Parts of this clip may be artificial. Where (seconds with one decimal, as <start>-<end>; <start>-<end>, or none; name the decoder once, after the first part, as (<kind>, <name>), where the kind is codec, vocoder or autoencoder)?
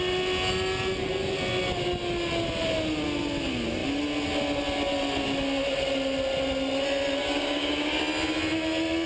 7.2-8.0 (codec, DAC)